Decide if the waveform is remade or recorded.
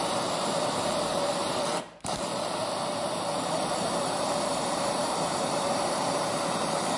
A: remade